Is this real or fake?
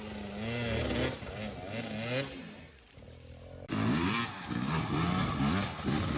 real